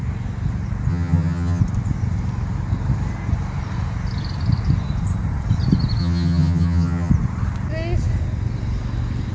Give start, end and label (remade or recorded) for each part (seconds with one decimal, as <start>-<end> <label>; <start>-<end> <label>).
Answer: 0.0-0.9 recorded; 0.9-1.6 remade; 1.6-6.0 recorded; 6.0-7.1 remade; 7.1-9.3 recorded